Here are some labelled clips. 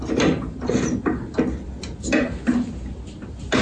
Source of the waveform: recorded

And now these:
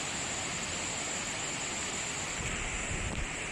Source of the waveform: recorded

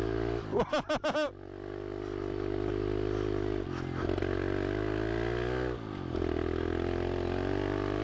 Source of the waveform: recorded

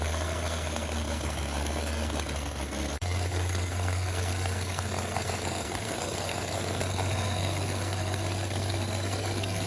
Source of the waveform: remade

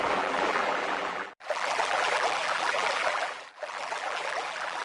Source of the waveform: remade